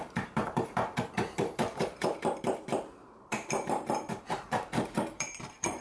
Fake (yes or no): yes